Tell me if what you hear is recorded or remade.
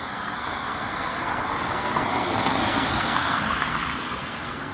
remade